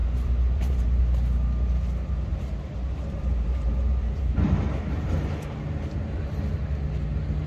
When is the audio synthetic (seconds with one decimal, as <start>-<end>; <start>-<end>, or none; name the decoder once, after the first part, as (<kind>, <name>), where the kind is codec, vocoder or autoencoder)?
0.0-1.0 (vocoder, BigVGAN v2); 2.3-6.8